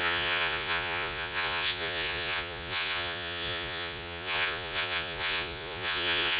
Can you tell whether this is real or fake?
fake